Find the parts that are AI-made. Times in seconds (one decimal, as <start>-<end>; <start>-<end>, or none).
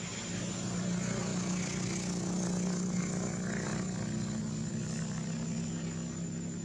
none